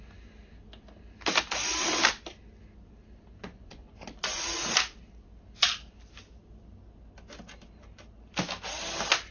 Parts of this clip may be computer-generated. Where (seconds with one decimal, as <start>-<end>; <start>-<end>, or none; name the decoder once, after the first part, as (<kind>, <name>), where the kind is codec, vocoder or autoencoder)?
3.4-4.7 (vocoder, Vocos)